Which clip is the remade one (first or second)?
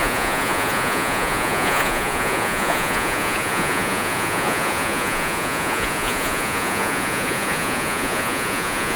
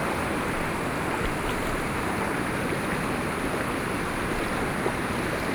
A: first